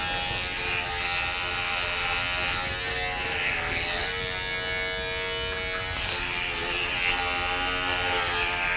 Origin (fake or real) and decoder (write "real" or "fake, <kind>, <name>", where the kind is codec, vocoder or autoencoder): real